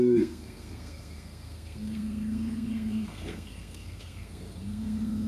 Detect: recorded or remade remade